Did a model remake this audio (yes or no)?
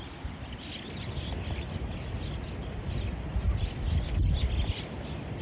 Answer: no